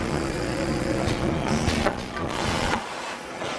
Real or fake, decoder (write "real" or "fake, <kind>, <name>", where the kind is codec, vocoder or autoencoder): fake, vocoder, Vocos